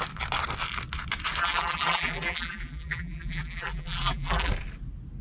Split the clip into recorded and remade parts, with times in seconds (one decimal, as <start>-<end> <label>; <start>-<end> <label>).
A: 0.0-1.4 recorded; 1.4-4.5 remade; 4.5-5.2 recorded